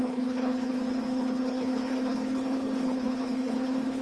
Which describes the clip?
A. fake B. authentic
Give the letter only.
A